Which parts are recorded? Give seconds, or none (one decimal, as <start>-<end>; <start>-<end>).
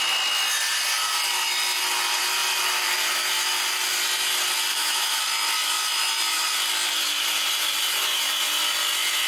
0.0-4.7; 5.2-9.3